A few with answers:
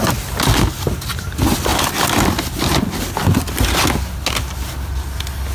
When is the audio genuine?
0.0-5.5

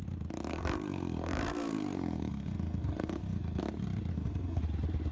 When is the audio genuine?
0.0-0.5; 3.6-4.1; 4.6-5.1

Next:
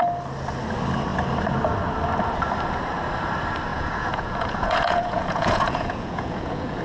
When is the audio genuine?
0.0-3.7